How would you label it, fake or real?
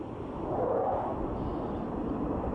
real